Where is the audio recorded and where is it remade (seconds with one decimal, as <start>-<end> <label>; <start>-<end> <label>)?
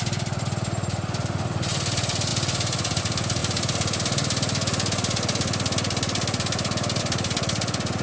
0.0-8.0 recorded